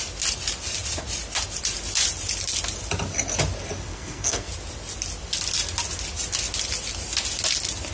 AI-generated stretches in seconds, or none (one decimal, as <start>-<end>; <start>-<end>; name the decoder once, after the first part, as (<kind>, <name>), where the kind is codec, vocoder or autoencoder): 3.9-4.5 (codec, SNAC)